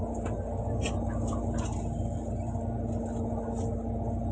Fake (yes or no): no